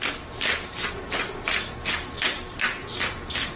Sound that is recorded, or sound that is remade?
recorded